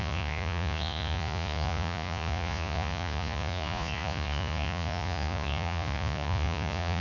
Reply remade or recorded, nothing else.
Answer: remade